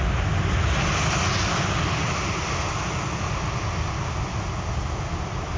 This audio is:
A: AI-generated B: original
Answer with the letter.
B